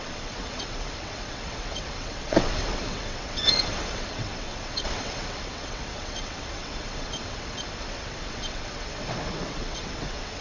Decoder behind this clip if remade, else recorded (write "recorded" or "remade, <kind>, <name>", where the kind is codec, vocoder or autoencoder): remade, vocoder, WaveNeXt